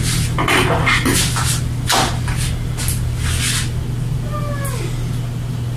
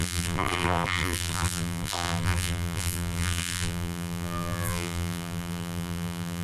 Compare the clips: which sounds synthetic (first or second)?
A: second